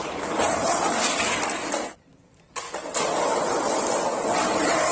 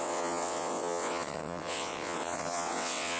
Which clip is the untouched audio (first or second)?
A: first